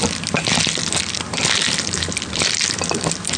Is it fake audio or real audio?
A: real